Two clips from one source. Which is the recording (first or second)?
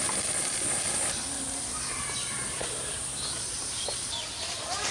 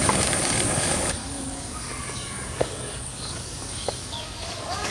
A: first